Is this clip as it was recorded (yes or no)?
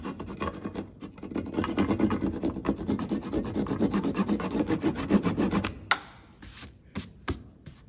yes